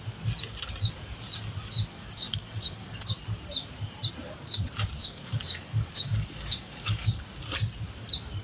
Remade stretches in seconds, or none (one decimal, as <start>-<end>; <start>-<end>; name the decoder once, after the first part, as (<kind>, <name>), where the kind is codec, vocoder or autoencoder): 1.9-3.1 (codec, DAC); 5.0-7.2